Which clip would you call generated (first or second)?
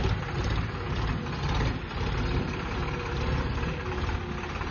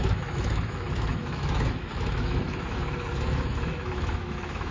second